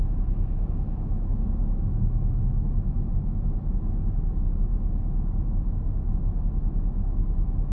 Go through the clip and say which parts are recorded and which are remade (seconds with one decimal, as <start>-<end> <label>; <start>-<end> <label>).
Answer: 0.0-3.7 remade; 3.7-7.7 recorded